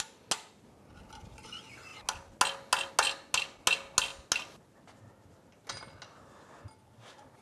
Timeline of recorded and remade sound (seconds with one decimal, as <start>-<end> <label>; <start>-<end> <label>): 0.0-7.4 recorded